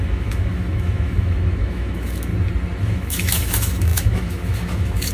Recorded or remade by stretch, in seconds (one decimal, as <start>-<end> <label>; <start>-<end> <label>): 0.0-2.3 remade; 2.3-2.8 recorded; 2.8-5.1 remade